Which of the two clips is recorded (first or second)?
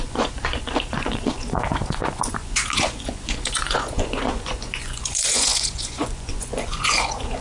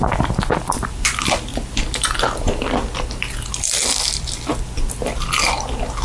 second